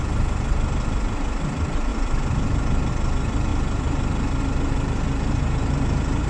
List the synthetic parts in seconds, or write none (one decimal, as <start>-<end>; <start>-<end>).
1.9-2.9; 3.5-4.4